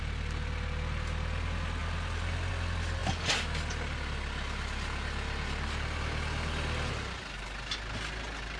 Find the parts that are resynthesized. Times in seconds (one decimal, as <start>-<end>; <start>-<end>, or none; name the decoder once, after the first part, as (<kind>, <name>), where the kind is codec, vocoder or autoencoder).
1.8-2.5 (vocoder, BigVGAN v2)